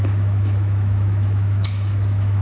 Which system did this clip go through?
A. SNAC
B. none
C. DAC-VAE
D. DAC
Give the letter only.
C